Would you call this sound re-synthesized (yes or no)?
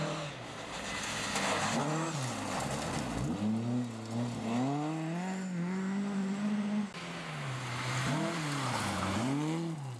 no